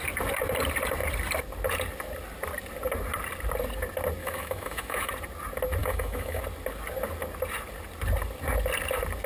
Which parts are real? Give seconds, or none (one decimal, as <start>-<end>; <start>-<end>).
0.0-4.2; 5.1-5.8; 6.4-9.3